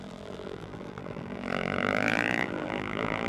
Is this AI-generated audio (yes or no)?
yes